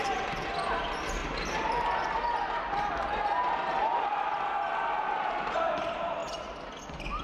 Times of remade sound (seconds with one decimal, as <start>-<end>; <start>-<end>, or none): 0.0-1.2; 3.7-7.2